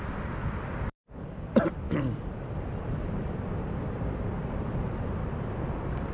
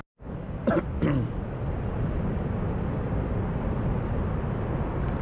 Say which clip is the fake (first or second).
first